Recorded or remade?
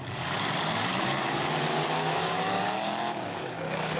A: remade